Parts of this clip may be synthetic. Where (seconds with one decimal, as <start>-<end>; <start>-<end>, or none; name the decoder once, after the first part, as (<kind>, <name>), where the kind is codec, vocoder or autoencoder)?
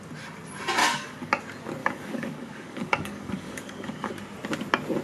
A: 0.8-1.3 (codec, DAC); 1.8-4.1